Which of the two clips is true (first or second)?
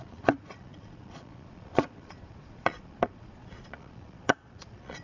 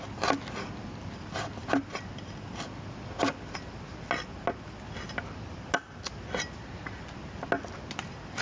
second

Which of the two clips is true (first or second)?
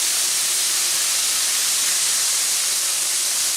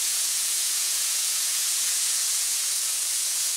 first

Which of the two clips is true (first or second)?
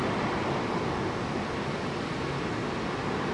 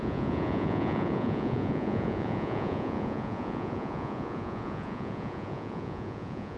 first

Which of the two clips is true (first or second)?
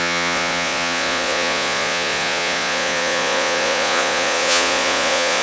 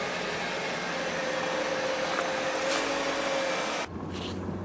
second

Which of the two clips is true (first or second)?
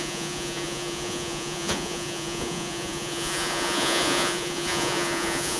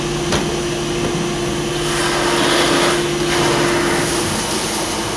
second